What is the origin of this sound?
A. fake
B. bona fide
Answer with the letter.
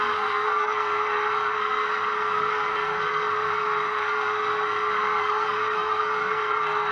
A